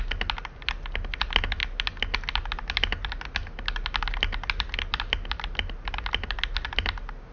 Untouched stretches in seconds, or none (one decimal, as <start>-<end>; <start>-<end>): 0.0-7.3